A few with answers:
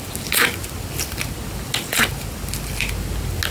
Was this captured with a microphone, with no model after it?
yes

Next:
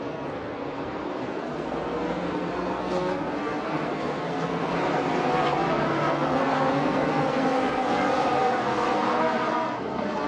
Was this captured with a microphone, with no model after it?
no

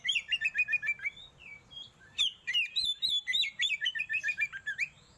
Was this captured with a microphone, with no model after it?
no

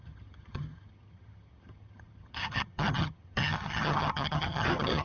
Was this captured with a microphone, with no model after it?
no